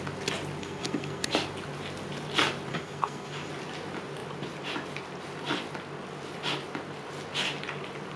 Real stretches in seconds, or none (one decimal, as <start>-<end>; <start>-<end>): 0.0-0.6; 1.3-2.7; 3.5-8.2